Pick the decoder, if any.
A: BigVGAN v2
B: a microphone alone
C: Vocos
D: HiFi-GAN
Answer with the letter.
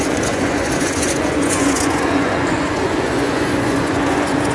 C